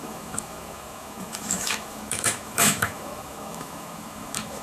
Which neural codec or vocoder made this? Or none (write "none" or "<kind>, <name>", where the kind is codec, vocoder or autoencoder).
autoencoder, DAC-VAE